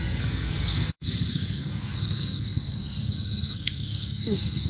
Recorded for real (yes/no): no